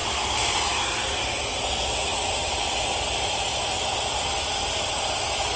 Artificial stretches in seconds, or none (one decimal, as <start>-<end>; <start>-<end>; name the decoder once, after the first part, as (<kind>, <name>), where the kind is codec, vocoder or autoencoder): none